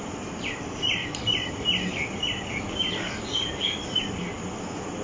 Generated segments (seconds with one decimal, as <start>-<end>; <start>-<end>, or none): none